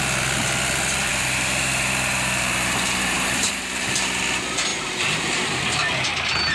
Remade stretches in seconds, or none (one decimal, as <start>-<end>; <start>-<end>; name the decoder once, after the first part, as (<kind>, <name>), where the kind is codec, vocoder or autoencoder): 1.1-4.2 (vocoder, BigVGAN v2); 4.7-5.6